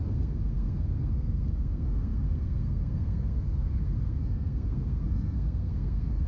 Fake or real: fake